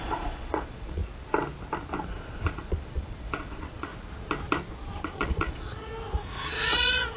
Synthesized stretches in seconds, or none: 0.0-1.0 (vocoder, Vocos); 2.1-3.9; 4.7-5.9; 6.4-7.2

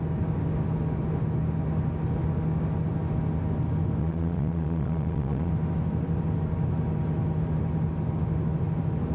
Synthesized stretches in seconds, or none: 4.0-5.5 (vocoder, Vocos)

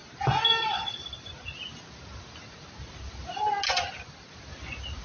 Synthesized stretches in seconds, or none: none

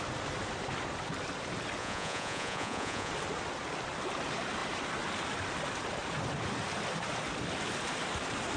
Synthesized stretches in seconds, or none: 1.8-3.1 (vocoder, Vocos)

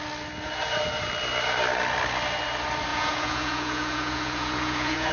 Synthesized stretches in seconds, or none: 2.9-5.1 (vocoder, Vocos)

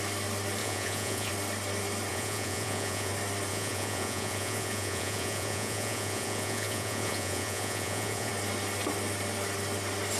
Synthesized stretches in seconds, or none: 0.6-1.3 (vocoder, Vocos); 2.1-3.1; 3.5-8.3

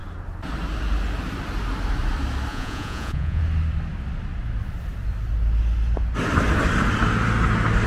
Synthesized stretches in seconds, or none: 2.5-3.4 (vocoder, Vocos)

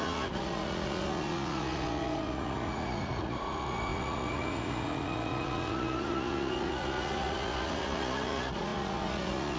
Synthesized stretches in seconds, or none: 0.0-9.6 (vocoder, Vocos)